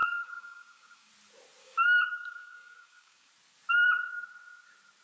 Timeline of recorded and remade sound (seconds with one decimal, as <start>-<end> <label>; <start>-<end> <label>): 0.0-1.1 remade; 1.1-1.6 recorded; 1.6-3.3 remade; 3.3-5.0 recorded